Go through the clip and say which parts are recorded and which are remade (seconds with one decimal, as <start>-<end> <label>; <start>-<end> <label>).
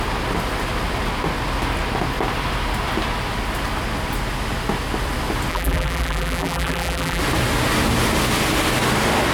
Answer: 0.0-5.5 recorded; 5.5-7.2 remade; 7.2-9.3 recorded